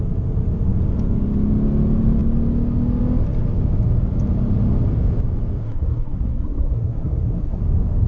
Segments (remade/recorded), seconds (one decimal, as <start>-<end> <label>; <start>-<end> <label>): 0.0-5.6 recorded; 5.6-7.6 remade; 7.6-8.1 recorded